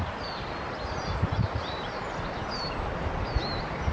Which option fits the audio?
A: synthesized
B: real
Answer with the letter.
B